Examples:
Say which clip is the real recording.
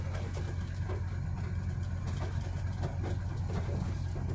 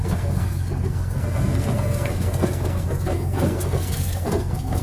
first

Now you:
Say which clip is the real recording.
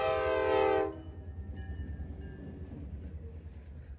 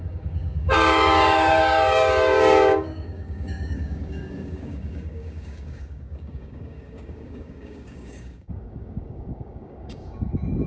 first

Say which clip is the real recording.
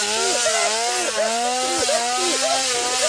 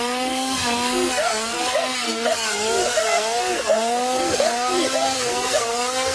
first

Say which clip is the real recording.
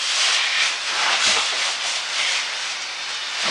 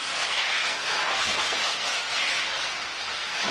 first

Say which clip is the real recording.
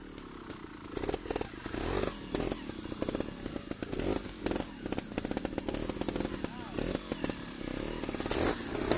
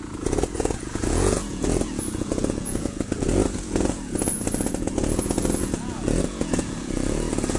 first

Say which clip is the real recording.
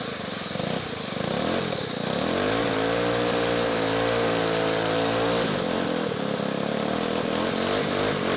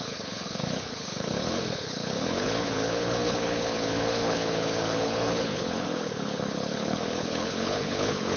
first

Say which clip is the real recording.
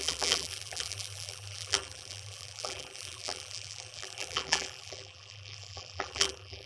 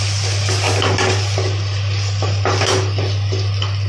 second